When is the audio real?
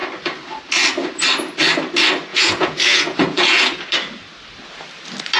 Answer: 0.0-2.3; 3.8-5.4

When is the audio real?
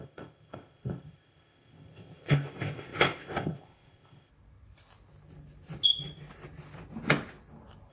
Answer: 4.3-7.9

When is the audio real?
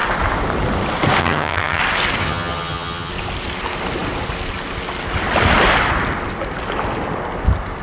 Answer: 0.0-1.2; 1.8-2.2; 3.1-7.8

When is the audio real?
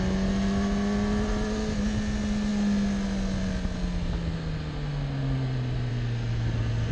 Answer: 0.0-6.9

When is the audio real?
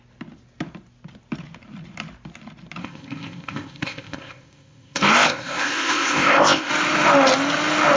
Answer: 0.0-2.8; 6.7-8.0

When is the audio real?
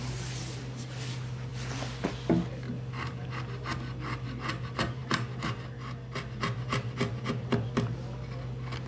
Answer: 0.0-8.9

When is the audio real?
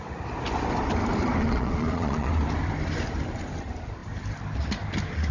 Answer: 0.0-1.4; 2.3-5.3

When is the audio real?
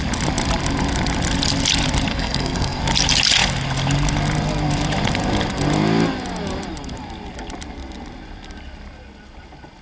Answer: 0.0-2.1; 2.8-9.8